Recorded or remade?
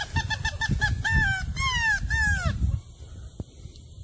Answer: recorded